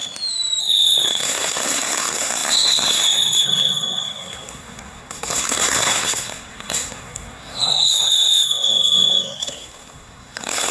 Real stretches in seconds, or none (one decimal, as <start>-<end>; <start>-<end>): 0.0-0.6